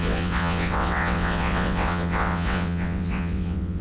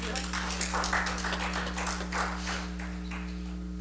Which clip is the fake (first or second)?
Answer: first